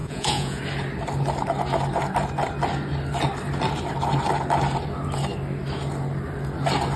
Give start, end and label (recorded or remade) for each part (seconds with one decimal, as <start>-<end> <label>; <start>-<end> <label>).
0.0-0.6 remade; 0.6-7.0 recorded